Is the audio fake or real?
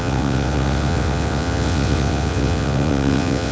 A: fake